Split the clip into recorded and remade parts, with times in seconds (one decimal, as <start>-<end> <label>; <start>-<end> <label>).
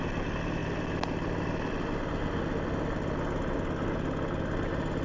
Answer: 0.0-5.0 recorded